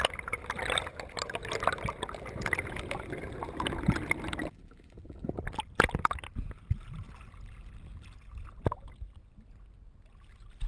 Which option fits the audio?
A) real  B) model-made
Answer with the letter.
A